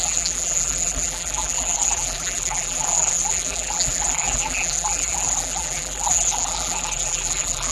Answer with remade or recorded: remade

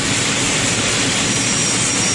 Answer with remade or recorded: recorded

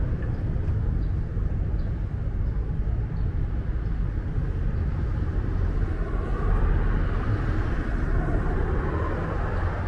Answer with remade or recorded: recorded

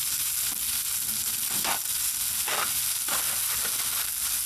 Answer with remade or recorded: recorded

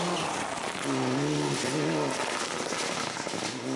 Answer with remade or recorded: recorded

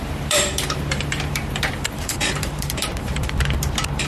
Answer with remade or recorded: remade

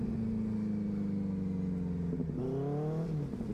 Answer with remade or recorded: recorded